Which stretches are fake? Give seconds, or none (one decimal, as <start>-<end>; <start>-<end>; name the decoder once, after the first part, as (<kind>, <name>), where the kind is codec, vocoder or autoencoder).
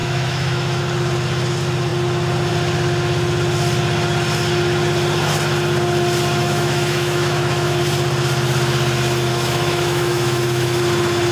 0.0-0.8 (autoencoder, DAC-VAE); 6.4-7.8; 9.3-10.8